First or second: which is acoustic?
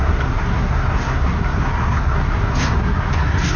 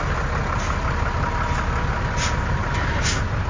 second